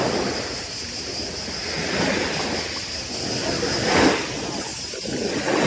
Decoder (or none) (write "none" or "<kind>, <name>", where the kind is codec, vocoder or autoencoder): none